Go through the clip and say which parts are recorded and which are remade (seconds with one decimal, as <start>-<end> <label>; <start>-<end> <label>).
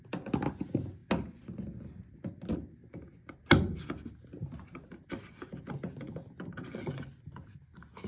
0.0-8.1 recorded